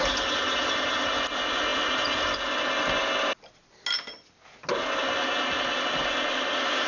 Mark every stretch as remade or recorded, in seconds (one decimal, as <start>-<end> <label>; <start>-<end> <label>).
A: 0.0-6.9 recorded